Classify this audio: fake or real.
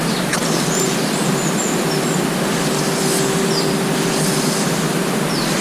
real